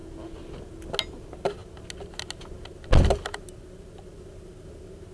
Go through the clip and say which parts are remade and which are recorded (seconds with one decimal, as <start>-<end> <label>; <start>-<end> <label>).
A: 0.0-5.1 recorded